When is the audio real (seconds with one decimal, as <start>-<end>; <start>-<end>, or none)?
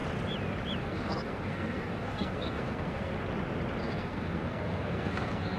0.0-0.8; 3.1-3.8